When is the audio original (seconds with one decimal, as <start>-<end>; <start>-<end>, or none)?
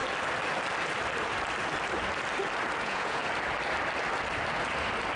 0.0-2.8; 3.2-5.2